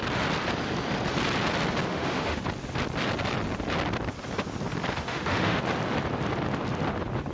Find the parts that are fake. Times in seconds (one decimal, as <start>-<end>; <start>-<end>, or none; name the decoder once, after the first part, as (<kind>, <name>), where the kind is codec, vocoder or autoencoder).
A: 1.9-2.4 (autoencoder, DAC-VAE); 5.0-5.6